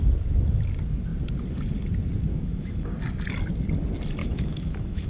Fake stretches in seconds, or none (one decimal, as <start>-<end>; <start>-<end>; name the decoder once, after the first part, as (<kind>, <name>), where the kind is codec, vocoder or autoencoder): 2.3-2.9 (autoencoder, DAC-VAE); 4.2-5.1

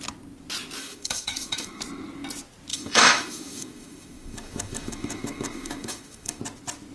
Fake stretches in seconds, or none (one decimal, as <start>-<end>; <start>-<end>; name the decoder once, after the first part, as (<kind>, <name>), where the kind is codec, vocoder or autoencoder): 0.8-1.8 (autoencoder, DAC-VAE); 2.7-6.4

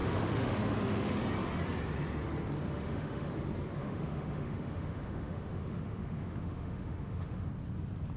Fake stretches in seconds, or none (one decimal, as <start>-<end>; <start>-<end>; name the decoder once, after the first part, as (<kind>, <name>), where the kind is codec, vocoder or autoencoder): 0.0-1.2 (autoencoder, DAC-VAE); 2.6-3.3; 3.8-7.5